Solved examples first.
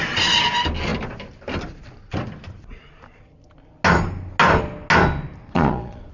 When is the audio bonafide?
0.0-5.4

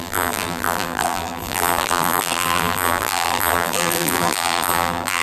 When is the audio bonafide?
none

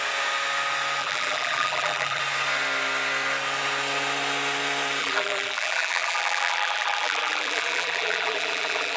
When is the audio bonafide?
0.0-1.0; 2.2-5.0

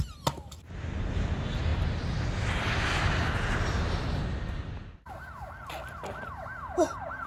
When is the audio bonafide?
0.0-7.3

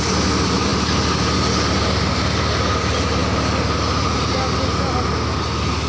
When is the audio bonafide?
0.0-5.9